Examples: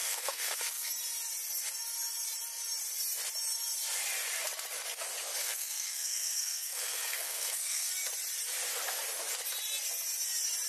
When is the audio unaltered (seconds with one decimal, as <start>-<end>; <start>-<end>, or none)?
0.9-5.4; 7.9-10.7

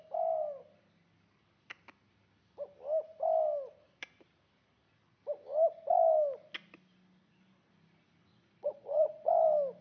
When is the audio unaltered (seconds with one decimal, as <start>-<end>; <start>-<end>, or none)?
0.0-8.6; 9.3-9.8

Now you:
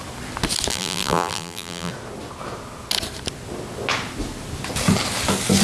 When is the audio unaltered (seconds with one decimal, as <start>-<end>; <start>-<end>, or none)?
0.0-0.7; 1.9-5.6

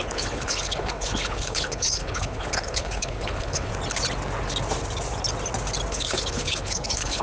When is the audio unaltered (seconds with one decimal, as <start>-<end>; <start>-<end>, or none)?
3.7-5.9

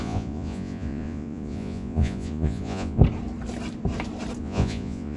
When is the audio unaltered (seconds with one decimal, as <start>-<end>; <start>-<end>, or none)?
3.0-4.4

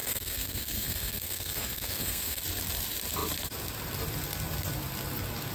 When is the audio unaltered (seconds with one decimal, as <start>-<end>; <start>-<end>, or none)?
2.4-5.5